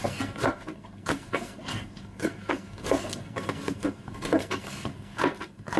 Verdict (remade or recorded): remade